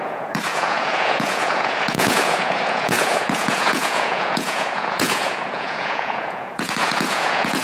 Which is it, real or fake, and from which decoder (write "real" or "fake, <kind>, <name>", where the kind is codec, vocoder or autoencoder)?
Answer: fake, vocoder, Vocos